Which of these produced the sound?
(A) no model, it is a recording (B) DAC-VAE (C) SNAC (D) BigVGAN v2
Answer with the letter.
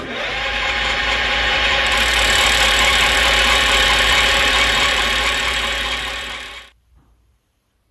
D